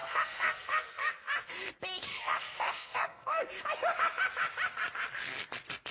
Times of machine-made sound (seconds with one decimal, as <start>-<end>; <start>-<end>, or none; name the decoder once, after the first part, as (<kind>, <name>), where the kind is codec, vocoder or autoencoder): 0.0-1.3 (codec, SNAC); 2.1-3.6